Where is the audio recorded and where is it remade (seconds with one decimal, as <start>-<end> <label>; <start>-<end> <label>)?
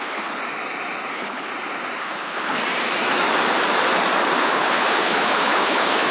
0.0-0.4 remade; 0.4-1.1 recorded; 1.1-1.5 remade; 1.5-2.0 recorded; 2.0-2.6 remade; 2.6-4.4 recorded; 4.4-6.1 remade